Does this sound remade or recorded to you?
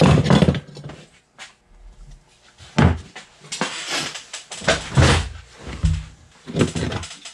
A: recorded